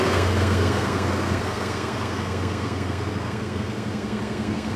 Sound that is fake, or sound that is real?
fake